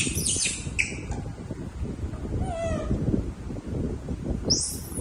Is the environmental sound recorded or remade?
recorded